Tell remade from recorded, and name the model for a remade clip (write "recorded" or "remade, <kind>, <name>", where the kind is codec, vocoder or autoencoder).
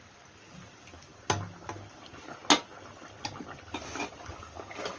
recorded